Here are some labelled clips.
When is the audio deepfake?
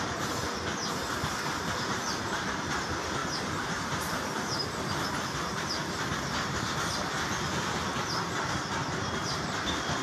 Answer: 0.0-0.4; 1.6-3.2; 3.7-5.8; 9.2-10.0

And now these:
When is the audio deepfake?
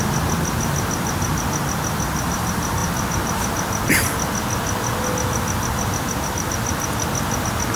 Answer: none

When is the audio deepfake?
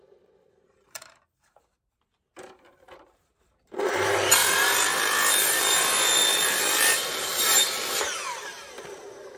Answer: 0.0-4.4; 5.3-9.4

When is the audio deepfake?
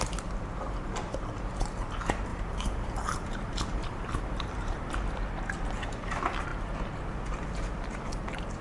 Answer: 2.3-4.9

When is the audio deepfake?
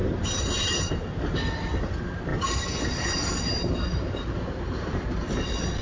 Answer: none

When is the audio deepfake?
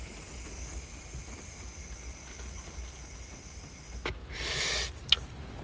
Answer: 4.2-4.7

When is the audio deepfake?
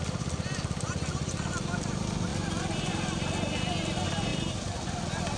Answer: 4.3-4.9